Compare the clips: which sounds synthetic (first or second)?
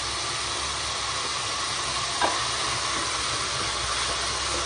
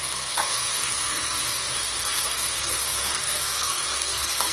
second